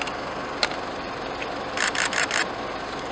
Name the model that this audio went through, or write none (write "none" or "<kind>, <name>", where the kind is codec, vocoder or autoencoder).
none